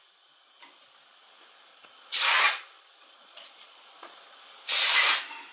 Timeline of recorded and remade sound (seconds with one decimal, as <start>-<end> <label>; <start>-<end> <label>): 0.0-1.7 recorded; 1.7-4.4 remade; 4.4-5.5 recorded